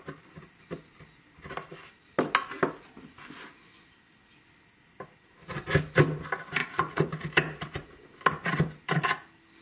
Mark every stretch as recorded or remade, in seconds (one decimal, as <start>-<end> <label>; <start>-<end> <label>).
0.0-6.6 recorded; 6.6-7.3 remade; 7.3-9.6 recorded